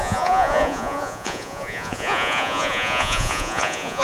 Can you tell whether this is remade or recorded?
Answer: remade